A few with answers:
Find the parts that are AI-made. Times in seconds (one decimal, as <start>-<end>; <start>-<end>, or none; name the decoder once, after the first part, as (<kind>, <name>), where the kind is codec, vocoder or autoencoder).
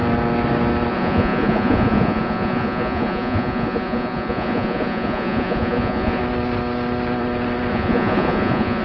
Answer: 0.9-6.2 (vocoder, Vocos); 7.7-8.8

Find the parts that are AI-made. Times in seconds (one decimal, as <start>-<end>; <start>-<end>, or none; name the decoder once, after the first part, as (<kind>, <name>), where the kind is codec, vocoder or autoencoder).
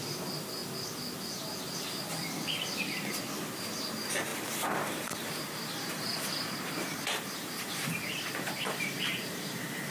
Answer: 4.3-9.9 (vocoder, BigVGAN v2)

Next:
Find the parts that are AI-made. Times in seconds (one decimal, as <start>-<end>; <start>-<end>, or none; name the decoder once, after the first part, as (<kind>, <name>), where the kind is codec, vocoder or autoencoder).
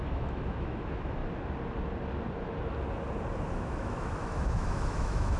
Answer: 0.0-1.2 (autoencoder, DAC-VAE); 3.5-5.4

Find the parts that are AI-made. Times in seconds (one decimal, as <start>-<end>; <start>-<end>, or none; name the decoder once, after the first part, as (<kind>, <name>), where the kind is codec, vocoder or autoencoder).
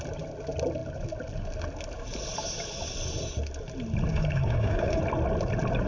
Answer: 4.1-5.0 (codec, DAC)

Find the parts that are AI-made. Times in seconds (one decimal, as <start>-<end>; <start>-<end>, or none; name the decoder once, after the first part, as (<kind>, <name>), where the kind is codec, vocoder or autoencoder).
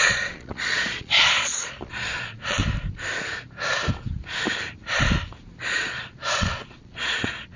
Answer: 0.0-2.6 (vocoder, Vocos); 5.6-7.6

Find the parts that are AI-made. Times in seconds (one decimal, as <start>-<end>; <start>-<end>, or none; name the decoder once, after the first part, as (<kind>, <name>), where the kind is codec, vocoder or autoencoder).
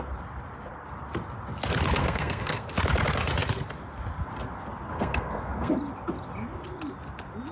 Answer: 2.0-2.7 (codec, SNAC); 4.9-5.7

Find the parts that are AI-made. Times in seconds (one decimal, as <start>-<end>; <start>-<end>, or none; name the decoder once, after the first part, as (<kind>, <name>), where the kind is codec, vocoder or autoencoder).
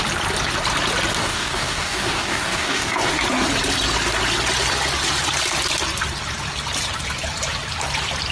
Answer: 1.2-3.1 (codec, DAC)